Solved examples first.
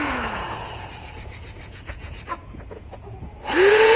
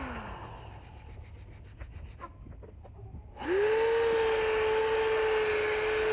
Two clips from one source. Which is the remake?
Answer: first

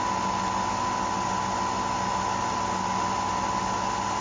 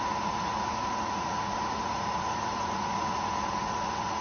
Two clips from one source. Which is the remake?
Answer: second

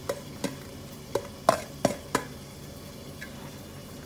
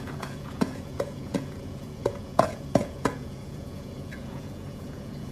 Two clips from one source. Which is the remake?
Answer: second